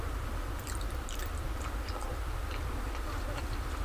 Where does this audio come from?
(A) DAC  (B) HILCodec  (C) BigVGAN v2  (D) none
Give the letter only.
D